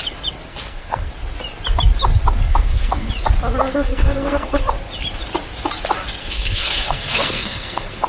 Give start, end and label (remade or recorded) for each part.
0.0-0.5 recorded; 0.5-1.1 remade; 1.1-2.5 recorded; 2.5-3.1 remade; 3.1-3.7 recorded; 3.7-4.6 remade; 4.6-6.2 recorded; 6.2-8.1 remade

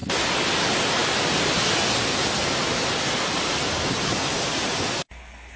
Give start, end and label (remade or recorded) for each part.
0.0-5.6 recorded

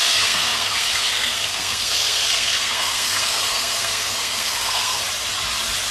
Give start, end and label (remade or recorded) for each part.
0.0-5.0 remade; 5.0-5.9 recorded

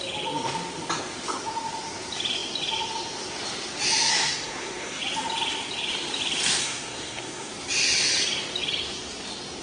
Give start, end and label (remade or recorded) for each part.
0.0-4.1 recorded; 4.1-5.0 remade; 5.0-6.6 recorded; 6.6-7.5 remade; 7.5-9.6 recorded

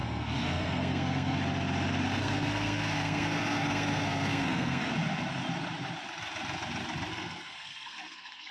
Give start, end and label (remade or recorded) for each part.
0.0-1.4 remade; 1.4-2.2 recorded; 2.2-4.9 remade; 4.9-7.1 recorded; 7.1-8.5 remade

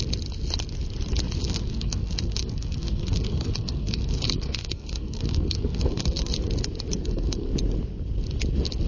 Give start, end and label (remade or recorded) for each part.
0.0-1.4 recorded; 1.4-6.3 remade; 6.3-7.0 recorded; 7.0-7.5 remade; 7.5-8.9 recorded

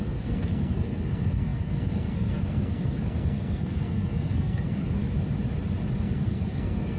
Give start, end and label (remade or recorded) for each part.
0.0-5.0 remade; 5.0-6.0 recorded; 6.0-7.0 remade